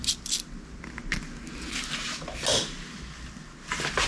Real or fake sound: real